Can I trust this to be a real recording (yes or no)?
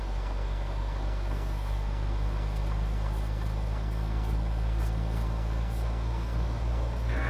no